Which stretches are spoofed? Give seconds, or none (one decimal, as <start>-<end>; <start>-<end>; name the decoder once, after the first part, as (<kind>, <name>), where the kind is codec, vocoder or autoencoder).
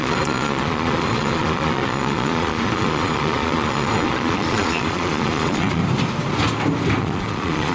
0.0-5.8 (vocoder, Vocos); 7.0-7.7